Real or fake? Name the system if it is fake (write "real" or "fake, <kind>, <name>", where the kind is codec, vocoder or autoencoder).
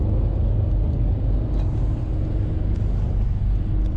real